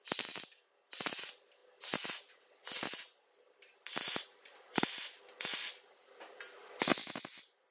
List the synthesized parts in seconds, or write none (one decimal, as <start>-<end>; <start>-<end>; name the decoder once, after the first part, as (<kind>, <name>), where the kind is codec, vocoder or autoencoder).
none